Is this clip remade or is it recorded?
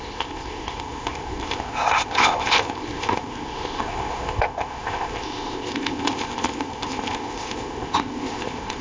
remade